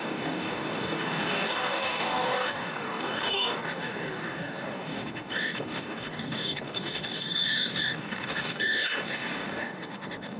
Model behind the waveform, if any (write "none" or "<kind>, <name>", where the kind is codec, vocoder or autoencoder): codec, DAC